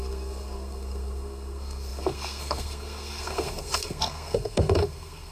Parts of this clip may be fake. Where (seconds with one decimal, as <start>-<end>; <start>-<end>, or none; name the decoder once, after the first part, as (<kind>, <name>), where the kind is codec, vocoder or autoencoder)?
0.0-5.3 (codec, SNAC)